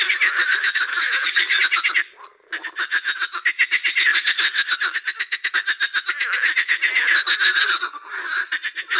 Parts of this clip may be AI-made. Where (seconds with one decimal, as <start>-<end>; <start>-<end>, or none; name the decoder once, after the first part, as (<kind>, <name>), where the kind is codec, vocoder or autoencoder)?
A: 0.9-1.6 (codec, DAC); 7.5-8.2